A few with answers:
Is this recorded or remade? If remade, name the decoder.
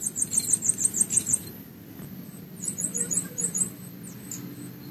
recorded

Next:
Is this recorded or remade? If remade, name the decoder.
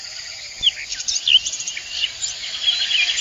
recorded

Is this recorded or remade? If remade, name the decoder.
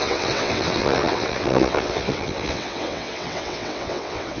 remade, vocoder, WaveNeXt